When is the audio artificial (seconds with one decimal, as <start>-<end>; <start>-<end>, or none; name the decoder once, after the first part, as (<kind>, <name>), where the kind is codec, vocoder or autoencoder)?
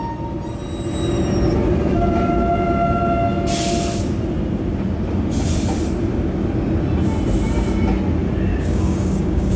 8.5-9.6 (codec, DAC)